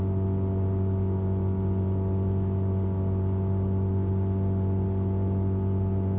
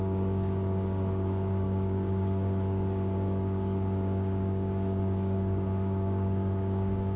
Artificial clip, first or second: second